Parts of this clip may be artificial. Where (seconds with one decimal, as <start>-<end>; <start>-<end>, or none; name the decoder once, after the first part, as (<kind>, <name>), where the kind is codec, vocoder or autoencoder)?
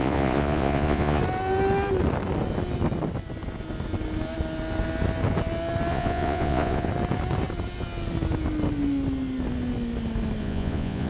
0.0-1.2 (vocoder, Vocos); 5.9-6.9; 10.4-11.1